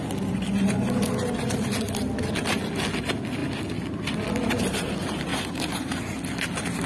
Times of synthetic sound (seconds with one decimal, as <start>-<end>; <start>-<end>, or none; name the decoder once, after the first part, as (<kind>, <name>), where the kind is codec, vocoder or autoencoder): 5.3-6.0 (vocoder, BigVGAN v2)